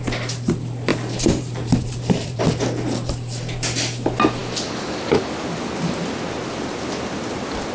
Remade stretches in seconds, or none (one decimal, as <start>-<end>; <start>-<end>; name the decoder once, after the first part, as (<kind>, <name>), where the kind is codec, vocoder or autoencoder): 0.9-2.4 (vocoder, BigVGAN v2)